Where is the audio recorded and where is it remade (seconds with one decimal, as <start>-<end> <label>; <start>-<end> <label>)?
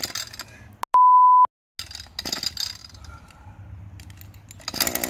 0.0-5.1 recorded